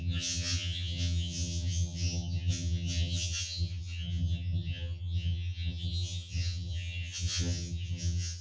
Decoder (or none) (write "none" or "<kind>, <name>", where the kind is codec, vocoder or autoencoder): vocoder, HiFi-GAN